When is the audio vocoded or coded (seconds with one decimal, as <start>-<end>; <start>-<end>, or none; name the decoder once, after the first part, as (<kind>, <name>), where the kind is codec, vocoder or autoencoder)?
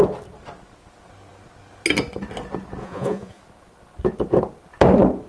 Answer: 2.8-3.4 (vocoder, Vocos)